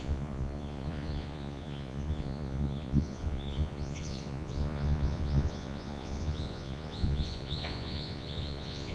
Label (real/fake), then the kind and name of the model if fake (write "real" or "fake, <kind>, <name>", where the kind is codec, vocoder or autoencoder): fake, vocoder, Vocos